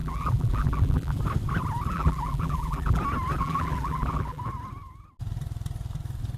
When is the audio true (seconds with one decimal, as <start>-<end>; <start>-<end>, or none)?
1.2-1.9; 3.0-3.4; 4.4-6.4